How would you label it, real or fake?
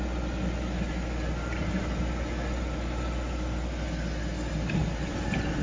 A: real